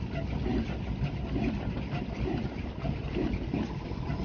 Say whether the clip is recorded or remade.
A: recorded